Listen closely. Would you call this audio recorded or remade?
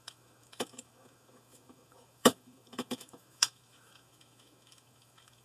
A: remade